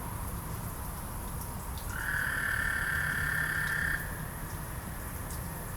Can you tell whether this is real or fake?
fake